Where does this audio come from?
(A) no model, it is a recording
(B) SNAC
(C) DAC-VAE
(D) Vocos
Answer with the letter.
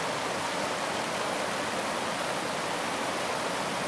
A